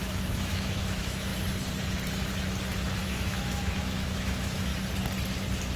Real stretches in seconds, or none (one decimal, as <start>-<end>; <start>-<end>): 1.3-3.0; 4.7-5.8